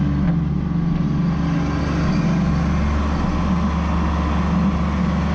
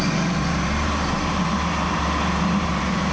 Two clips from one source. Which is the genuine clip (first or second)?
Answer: first